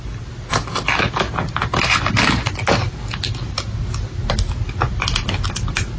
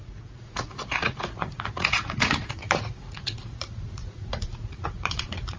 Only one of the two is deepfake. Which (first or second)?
second